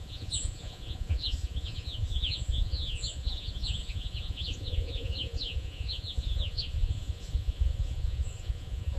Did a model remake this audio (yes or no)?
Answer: yes